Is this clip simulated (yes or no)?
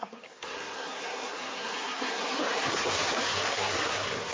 yes